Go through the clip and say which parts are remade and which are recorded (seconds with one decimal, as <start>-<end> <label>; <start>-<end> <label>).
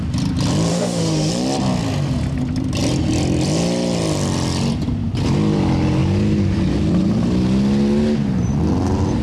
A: 0.0-0.7 recorded; 0.7-1.3 remade; 1.3-9.2 recorded